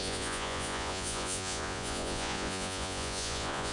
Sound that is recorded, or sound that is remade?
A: remade